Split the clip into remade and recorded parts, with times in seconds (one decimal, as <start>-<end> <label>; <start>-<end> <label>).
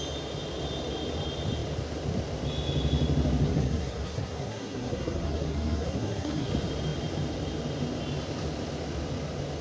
0.0-3.4 recorded; 3.4-6.5 remade; 6.5-9.6 recorded